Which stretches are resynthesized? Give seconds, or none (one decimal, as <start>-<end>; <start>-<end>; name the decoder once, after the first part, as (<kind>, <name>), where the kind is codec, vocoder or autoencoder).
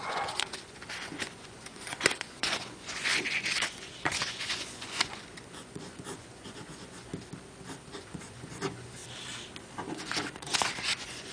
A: 0.0-7.1 (vocoder, Vocos); 8.0-9.0; 9.9-11.3